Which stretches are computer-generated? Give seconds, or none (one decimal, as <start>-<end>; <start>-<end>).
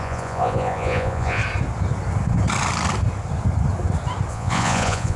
0.0-1.4; 4.3-5.2